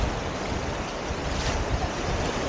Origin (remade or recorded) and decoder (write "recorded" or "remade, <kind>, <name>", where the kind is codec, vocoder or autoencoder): recorded